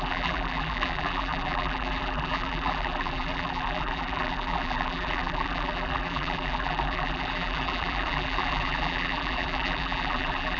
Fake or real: fake